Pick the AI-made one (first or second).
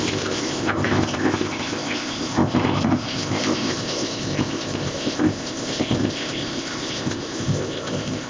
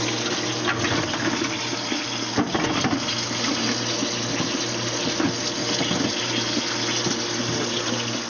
first